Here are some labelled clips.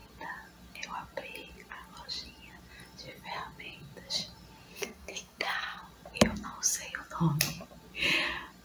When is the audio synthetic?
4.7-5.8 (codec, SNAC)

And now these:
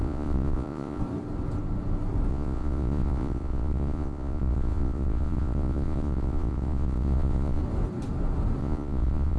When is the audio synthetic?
0.0-1.0 (vocoder, Vocos); 2.3-7.6; 8.6-9.4

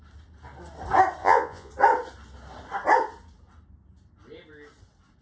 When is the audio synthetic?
1.2-1.7 (vocoder, Vocos)

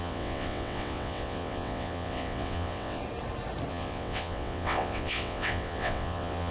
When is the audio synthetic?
0.0-3.0 (vocoder, WaveNeXt); 3.7-6.5

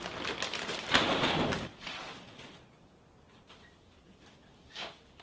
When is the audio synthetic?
1.7-2.9 (vocoder, Vocos)

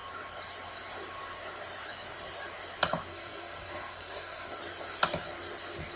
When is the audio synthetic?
3.1-4.6 (codec, SNAC)

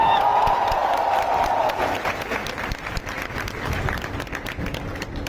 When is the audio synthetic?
0.0-0.8 (vocoder, Vocos); 1.6-2.4

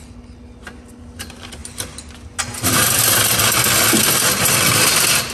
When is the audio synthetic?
none